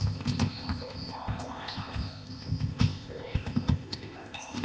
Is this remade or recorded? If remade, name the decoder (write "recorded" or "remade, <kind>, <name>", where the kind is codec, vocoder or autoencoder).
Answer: remade, codec, ZipCodec